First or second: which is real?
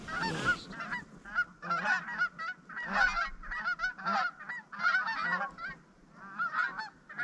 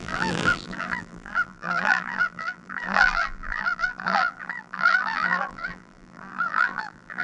first